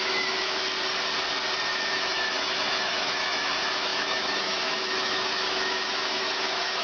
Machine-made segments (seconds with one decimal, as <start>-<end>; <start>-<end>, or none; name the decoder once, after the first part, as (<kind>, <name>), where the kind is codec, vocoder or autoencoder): 0.0-0.6 (autoencoder, DAC-VAE); 1.7-6.8